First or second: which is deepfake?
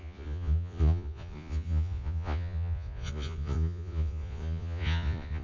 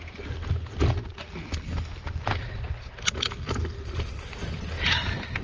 first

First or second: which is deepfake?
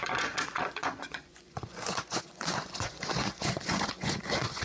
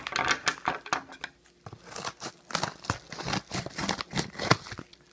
first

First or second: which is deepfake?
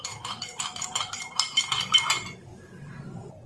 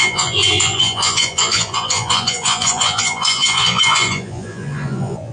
second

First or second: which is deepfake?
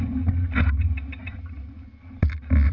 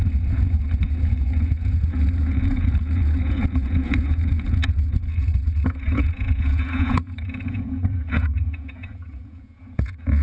second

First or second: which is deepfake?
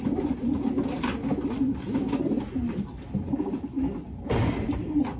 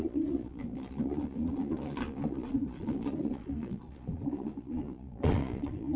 second